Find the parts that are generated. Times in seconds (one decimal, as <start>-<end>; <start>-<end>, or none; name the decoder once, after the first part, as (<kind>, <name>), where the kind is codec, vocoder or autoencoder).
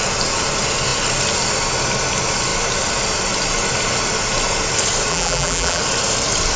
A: 5.1-5.8 (vocoder, BigVGAN v2)